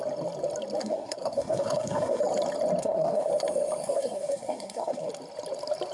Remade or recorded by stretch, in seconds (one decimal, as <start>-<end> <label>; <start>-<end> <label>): 0.0-0.8 recorded; 0.8-2.2 remade; 2.2-2.8 recorded; 2.8-3.3 remade; 3.3-3.8 recorded; 3.8-5.1 remade; 5.1-5.9 recorded